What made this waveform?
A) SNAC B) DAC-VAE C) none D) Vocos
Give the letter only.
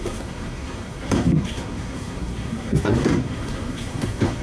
A